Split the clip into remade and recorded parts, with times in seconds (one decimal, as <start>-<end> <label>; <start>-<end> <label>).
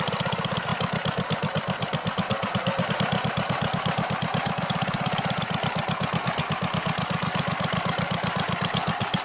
0.0-9.2 recorded